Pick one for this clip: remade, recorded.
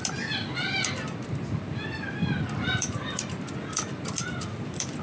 remade